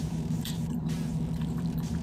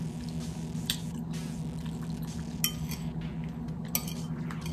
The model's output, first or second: first